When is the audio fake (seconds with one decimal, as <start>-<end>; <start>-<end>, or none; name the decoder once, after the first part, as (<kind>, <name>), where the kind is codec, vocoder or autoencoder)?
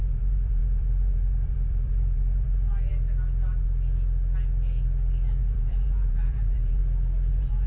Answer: 0.0-2.9 (vocoder, BigVGAN v2); 5.4-6.8; 7.3-7.7